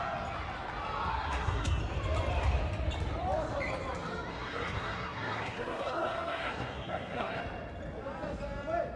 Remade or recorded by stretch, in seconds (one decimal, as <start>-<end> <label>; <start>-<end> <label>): 0.0-1.1 recorded; 1.1-1.8 remade; 1.8-4.3 recorded; 4.3-7.4 remade; 7.4-9.0 recorded